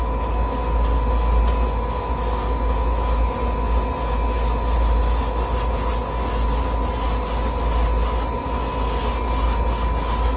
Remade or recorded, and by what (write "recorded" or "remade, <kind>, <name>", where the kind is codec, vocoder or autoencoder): recorded